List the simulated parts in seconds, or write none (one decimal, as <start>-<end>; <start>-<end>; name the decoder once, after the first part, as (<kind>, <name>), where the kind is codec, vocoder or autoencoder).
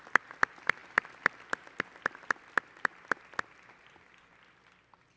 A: none